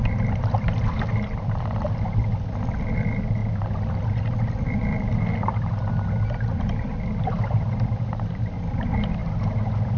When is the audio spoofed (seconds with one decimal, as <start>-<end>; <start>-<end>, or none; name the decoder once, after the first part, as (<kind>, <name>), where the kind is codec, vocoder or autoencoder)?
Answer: none

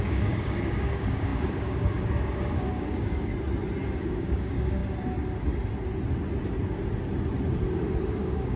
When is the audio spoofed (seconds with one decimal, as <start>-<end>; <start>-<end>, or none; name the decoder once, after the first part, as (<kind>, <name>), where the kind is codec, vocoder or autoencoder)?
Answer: 0.0-3.3 (codec, DAC); 4.0-4.8; 8.1-8.6

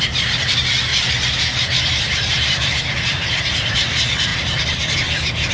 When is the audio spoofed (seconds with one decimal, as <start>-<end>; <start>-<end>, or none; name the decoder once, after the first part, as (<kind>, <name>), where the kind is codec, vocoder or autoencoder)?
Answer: 0.9-3.4 (vocoder, BigVGAN v2)

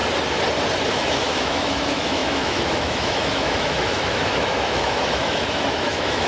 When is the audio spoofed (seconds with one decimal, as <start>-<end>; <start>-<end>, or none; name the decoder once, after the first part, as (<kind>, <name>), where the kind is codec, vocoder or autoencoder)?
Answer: 0.9-6.3 (autoencoder, DAC-VAE)